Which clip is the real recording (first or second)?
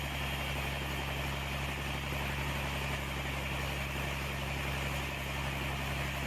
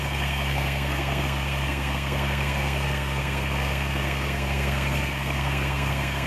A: first